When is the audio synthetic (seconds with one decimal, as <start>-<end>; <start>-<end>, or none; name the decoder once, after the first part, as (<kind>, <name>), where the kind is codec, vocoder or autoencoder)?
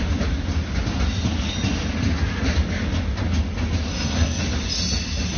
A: 3.9-4.4 (codec, SNAC)